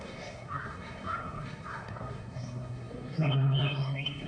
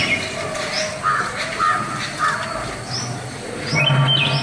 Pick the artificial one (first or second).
first